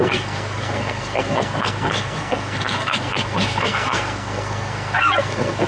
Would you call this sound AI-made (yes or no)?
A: yes